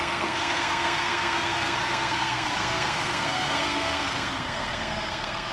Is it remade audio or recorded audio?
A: remade